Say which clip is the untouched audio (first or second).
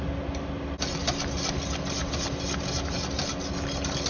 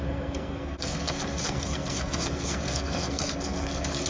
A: first